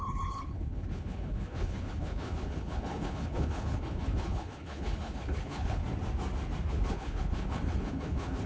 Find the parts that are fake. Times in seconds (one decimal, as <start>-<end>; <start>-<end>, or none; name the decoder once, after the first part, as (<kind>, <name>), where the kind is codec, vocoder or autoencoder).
0.0-5.8 (codec, HILCodec); 6.7-8.5